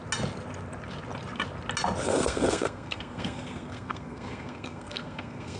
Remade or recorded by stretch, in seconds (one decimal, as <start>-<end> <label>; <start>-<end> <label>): 0.0-2.0 recorded; 2.0-5.6 remade